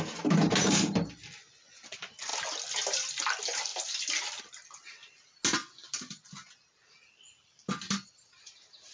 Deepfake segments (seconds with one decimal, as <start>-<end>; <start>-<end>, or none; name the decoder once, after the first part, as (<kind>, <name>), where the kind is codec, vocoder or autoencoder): none